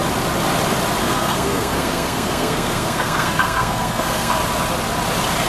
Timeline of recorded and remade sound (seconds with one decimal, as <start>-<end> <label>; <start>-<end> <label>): 0.0-1.0 recorded; 1.0-4.3 remade; 4.3-5.5 recorded